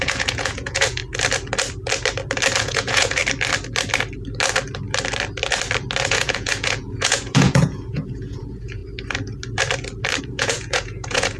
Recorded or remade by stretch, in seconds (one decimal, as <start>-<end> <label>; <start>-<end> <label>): 0.0-1.0 remade; 1.0-2.6 recorded; 2.6-3.2 remade; 3.2-6.1 recorded; 6.1-8.8 remade; 8.8-10.2 recorded; 10.2-11.4 remade